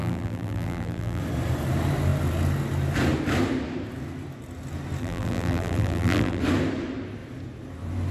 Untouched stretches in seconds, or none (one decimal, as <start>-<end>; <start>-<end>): 1.2-5.0; 6.4-8.1